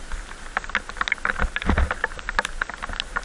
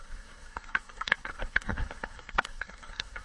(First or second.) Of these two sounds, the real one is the first